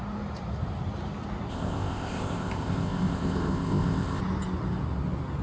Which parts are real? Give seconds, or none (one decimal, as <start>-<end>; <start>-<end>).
0.0-1.5; 4.2-5.4